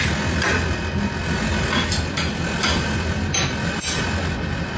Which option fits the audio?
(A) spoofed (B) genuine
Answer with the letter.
B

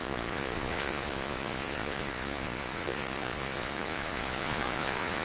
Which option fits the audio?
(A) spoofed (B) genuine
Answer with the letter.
A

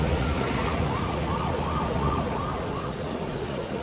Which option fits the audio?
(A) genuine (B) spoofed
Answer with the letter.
B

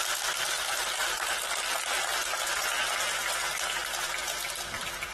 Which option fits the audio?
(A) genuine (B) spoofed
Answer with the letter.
A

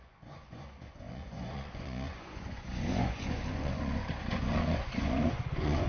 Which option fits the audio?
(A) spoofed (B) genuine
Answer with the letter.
A